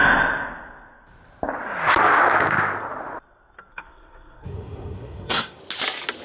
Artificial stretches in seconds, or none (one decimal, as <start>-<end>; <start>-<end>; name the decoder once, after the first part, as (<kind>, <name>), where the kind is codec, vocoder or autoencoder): 3.7-5.6 (codec, SNAC)